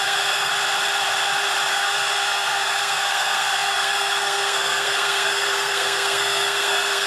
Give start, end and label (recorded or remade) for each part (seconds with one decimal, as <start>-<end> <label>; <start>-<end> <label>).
0.0-0.5 remade; 0.5-1.7 recorded; 1.7-7.1 remade